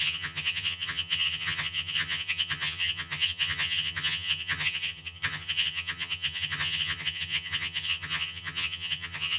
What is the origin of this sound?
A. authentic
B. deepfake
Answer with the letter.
B